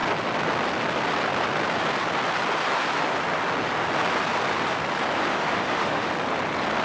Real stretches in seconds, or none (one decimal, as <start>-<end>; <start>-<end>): 0.0-5.3; 6.1-6.8